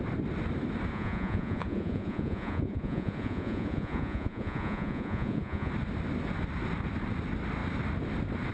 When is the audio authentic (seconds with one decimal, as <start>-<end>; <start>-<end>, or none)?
0.0-0.9; 5.7-8.5